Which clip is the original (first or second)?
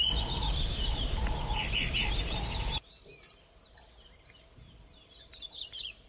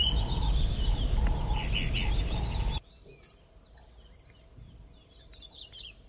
second